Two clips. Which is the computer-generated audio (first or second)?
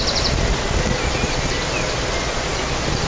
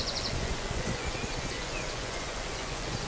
second